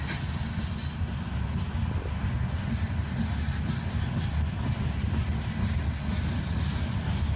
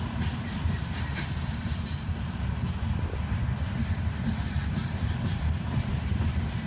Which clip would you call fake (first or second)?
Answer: second